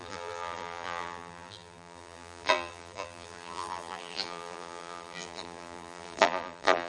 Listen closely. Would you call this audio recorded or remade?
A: remade